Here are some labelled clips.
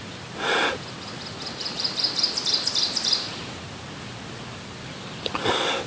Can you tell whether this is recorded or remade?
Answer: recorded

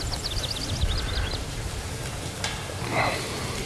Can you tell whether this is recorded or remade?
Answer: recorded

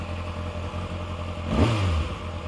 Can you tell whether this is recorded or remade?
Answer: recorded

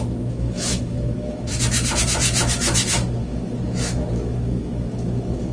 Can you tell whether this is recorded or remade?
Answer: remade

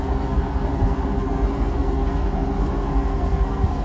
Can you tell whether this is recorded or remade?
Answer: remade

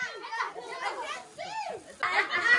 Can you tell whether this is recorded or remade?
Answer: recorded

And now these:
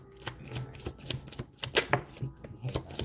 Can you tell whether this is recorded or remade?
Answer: recorded